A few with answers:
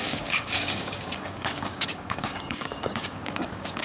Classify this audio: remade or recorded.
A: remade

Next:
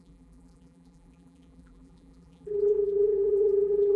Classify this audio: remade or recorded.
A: remade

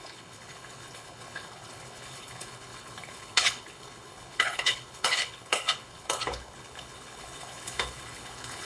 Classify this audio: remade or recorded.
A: remade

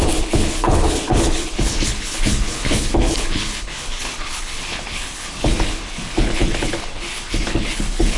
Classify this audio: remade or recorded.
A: remade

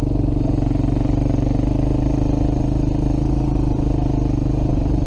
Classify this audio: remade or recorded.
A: recorded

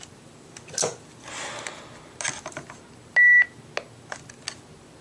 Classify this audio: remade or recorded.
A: recorded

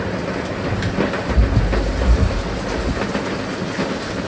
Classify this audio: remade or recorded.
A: recorded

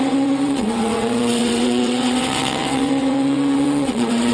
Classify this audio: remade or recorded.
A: remade